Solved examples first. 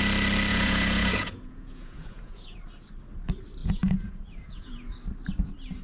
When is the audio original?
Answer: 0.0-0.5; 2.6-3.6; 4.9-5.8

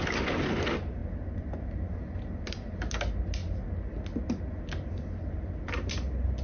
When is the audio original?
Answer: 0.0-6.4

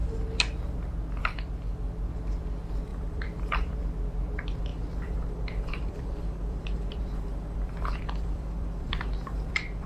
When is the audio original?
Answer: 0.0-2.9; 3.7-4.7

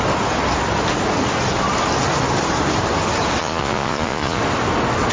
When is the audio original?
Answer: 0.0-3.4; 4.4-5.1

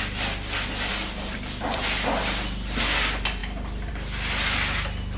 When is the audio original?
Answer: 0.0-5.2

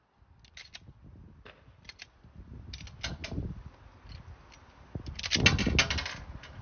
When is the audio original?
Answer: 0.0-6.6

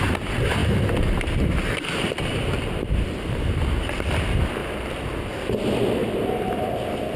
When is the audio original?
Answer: 0.0-0.6; 3.9-4.6; 5.2-6.0; 6.7-7.2

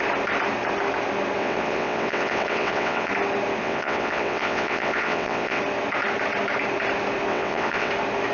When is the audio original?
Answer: 0.0-1.4; 3.1-3.6; 5.6-7.3; 7.9-8.3